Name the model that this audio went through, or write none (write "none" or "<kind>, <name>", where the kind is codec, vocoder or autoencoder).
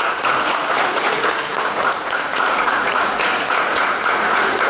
vocoder, Vocos